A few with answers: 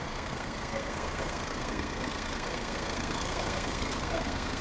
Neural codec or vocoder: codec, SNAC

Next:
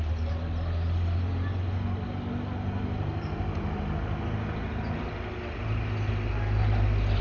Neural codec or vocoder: none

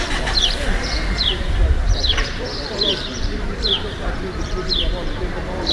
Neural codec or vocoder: vocoder, BigVGAN v2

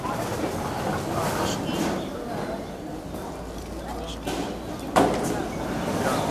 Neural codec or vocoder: none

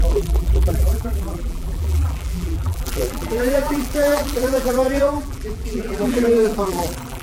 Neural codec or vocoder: vocoder, BigVGAN v2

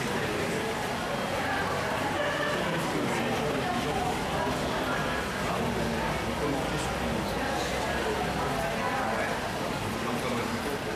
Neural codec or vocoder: none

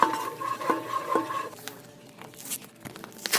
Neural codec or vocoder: none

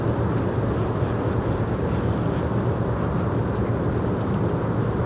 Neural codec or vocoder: none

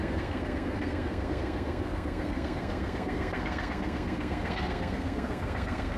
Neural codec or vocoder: codec, SNAC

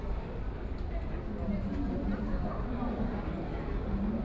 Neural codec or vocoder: none